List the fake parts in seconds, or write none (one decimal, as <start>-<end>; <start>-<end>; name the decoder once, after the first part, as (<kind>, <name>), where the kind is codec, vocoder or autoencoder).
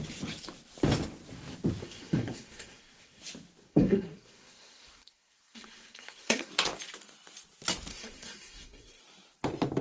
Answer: 1.8-3.2 (codec, SNAC); 3.6-6.5; 7.9-9.0